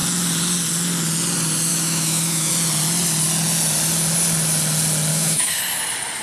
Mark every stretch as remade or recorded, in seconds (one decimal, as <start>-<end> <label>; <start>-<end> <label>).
0.0-1.7 recorded; 1.7-2.5 remade; 2.5-5.1 recorded; 5.1-5.6 remade; 5.6-6.2 recorded